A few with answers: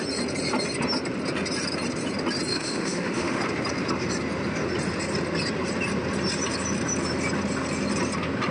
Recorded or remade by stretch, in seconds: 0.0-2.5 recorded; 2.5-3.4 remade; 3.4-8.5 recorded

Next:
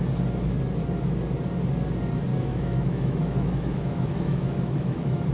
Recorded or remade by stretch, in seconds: 0.0-2.3 recorded; 2.3-5.3 remade

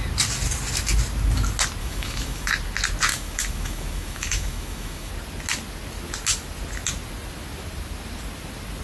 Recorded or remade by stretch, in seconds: 0.0-1.8 recorded; 1.8-2.5 remade; 2.5-3.1 recorded; 3.1-5.1 remade; 5.1-8.8 recorded

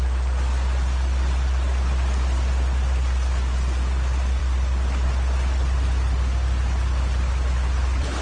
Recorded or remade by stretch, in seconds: 0.0-8.2 recorded

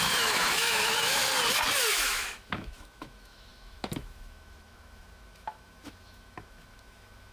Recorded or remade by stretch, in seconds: 0.0-1.2 remade; 1.2-1.9 recorded; 1.9-7.3 remade

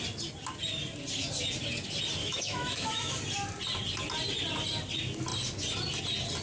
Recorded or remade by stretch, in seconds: 0.0-2.2 recorded; 2.2-3.2 remade; 3.2-6.4 recorded

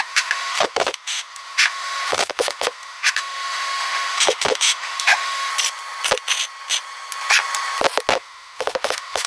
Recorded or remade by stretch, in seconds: 0.0-5.5 remade; 5.5-8.1 recorded; 8.1-9.3 remade

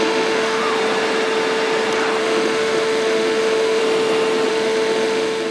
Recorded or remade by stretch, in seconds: 0.0-0.6 remade; 0.6-2.2 recorded; 2.2-3.8 remade; 3.8-4.5 recorded; 4.5-5.5 remade